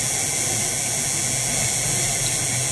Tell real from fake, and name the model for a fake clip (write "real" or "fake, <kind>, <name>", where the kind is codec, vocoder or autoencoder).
real